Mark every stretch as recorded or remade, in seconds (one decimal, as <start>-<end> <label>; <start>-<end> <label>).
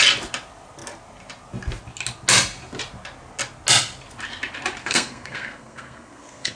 0.0-4.8 recorded; 4.8-6.6 remade